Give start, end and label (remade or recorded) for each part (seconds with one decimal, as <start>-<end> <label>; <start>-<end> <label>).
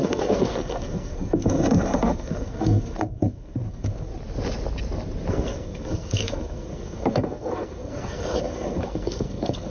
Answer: 0.0-4.1 remade; 4.1-5.3 recorded; 5.3-9.7 remade